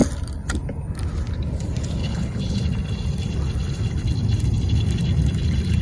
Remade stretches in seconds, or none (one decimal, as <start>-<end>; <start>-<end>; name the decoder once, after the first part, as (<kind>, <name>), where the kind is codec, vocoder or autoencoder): 2.0-2.6 (codec, HILCodec)